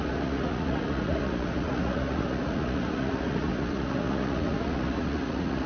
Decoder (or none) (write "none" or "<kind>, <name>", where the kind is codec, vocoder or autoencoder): vocoder, Vocos